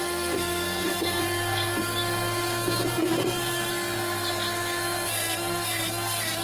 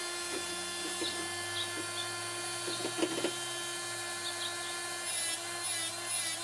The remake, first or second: first